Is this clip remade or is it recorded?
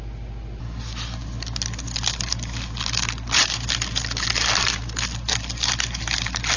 recorded